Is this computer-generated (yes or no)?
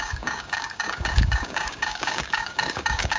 yes